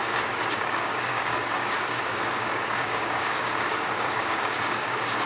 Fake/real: fake